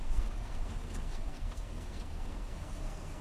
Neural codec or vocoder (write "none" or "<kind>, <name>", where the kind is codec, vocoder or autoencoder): codec, SNAC